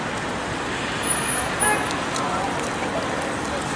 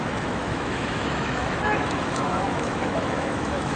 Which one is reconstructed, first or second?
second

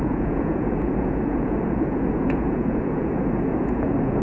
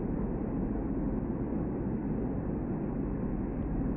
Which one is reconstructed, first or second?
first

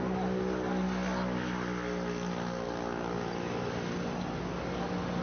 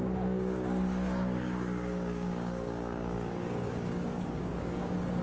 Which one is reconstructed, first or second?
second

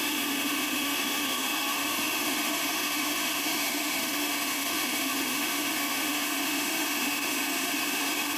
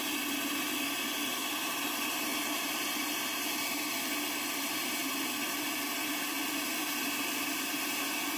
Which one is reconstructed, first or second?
first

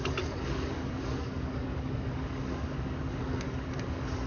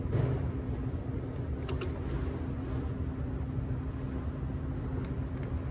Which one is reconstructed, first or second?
first